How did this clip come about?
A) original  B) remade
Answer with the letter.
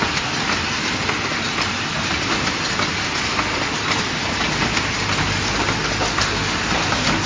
A